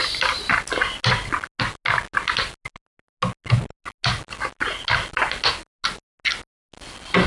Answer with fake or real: real